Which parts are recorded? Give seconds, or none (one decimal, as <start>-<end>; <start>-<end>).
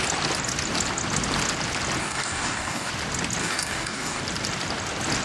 0.0-2.0; 2.9-3.4; 4.2-5.2